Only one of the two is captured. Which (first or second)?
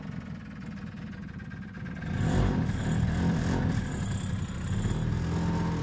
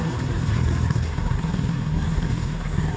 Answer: first